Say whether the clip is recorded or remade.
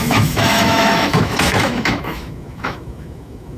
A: remade